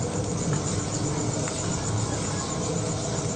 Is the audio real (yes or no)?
yes